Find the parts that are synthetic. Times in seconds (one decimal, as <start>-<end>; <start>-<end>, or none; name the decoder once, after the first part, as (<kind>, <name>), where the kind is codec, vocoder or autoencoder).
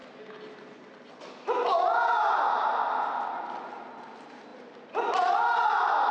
none